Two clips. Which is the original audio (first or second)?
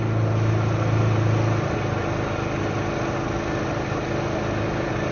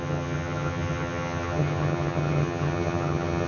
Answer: first